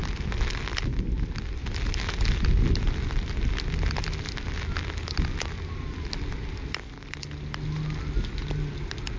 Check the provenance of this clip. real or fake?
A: real